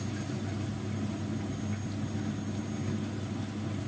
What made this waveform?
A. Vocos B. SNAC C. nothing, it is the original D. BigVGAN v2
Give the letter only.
C